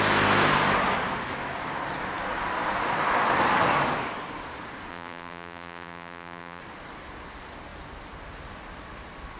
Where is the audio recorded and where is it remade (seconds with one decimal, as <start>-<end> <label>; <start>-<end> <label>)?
0.0-4.9 recorded; 4.9-6.6 remade; 6.6-9.4 recorded